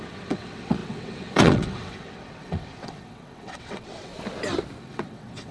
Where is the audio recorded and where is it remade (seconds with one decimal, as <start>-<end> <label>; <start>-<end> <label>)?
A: 0.0-4.1 remade; 4.1-4.8 recorded; 4.8-5.5 remade